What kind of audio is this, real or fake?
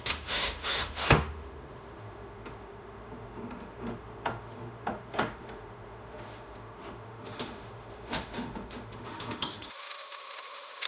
fake